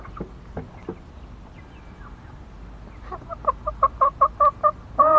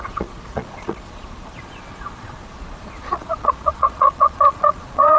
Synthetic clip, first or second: second